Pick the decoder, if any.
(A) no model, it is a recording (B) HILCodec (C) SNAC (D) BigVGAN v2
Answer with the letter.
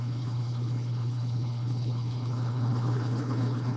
B